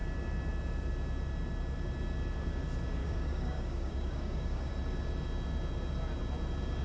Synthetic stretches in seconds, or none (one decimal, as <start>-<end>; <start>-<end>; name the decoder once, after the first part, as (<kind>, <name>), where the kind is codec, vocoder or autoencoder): 3.0-4.7 (codec, DAC)